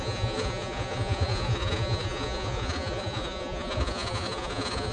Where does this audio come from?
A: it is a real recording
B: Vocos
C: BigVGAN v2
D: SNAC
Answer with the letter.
B